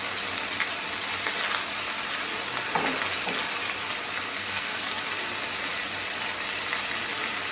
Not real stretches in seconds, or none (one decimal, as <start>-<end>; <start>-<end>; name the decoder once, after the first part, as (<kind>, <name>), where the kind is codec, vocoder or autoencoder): 4.3-5.0 (codec, SNAC)